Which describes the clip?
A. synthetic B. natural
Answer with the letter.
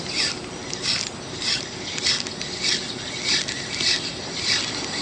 B